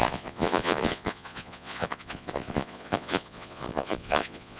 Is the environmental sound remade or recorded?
remade